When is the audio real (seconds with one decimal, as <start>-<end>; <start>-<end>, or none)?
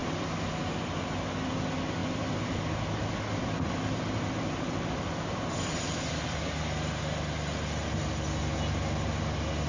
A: 0.6-2.0; 2.6-3.4; 6.4-9.7